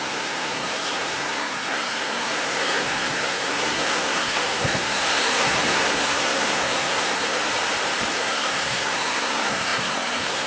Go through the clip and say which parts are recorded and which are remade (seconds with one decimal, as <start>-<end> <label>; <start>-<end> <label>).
0.0-7.4 remade; 7.4-8.1 recorded; 8.1-10.5 remade